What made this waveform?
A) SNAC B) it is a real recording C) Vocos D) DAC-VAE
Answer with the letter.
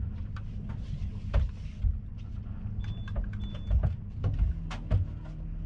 B